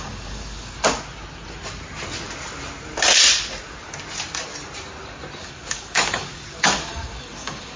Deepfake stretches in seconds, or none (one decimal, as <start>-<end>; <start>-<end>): 0.0-0.8; 5.4-7.8